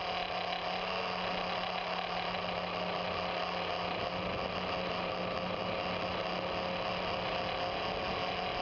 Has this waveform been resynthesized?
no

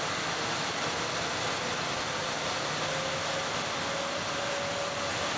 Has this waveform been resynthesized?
no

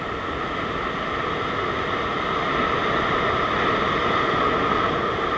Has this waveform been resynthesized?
no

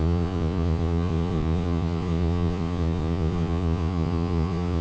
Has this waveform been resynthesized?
yes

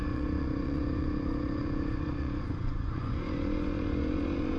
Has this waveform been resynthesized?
yes